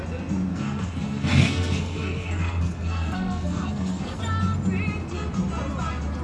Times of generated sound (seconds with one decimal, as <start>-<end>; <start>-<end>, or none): 0.5-4.2